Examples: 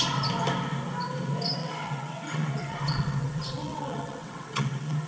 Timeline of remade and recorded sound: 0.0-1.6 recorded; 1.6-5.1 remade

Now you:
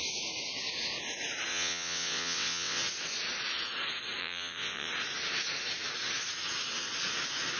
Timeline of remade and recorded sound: 0.0-1.5 recorded; 1.5-2.8 remade; 2.8-4.2 recorded; 4.2-4.9 remade; 4.9-7.6 recorded

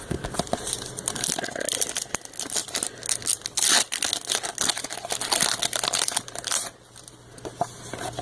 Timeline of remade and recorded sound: 0.0-8.2 recorded

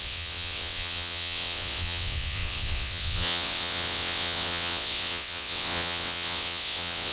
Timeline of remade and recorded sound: 0.0-7.1 remade

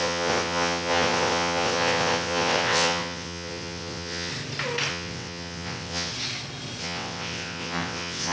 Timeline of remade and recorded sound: 0.0-4.3 remade; 4.3-4.9 recorded; 4.9-6.1 remade; 6.1-6.8 recorded; 6.8-8.3 remade

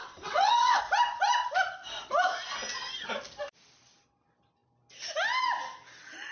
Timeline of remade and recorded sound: 0.0-0.8 remade; 0.8-6.3 recorded

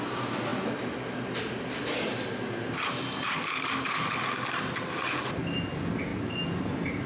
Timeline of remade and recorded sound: 0.0-7.1 recorded